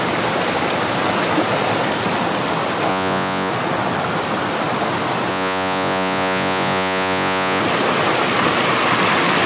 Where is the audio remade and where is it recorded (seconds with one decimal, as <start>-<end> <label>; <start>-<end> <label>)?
0.0-2.9 recorded; 2.9-3.5 remade; 3.5-5.3 recorded; 5.3-7.6 remade; 7.6-9.5 recorded